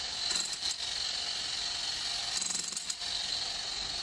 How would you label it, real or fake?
real